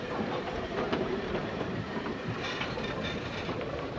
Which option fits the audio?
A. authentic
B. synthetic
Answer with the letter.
B